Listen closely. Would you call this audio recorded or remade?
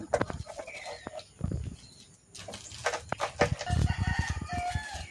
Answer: recorded